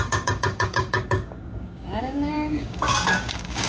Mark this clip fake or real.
fake